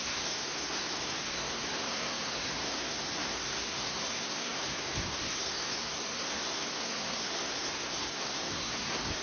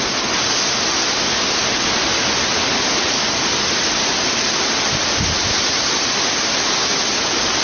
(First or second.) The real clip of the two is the second